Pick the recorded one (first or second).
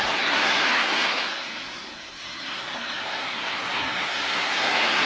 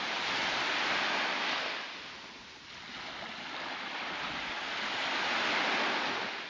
second